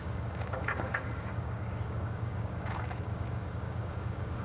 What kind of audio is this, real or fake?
fake